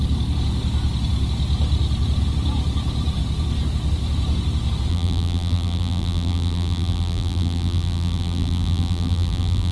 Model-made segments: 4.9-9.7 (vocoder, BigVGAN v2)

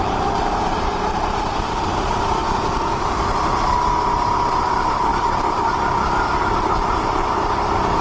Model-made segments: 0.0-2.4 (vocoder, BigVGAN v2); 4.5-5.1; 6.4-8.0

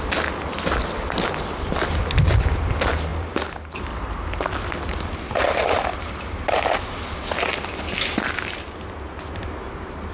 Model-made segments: 3.1-6.8 (vocoder, BigVGAN v2)

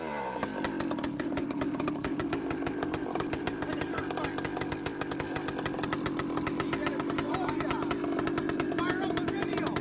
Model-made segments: 0.0-0.5 (vocoder, BigVGAN v2); 1.2-4.0; 8.4-9.8